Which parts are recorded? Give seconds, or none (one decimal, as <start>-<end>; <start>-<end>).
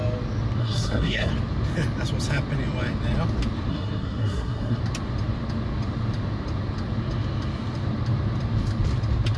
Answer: 0.0-0.6; 1.3-3.7; 4.8-9.4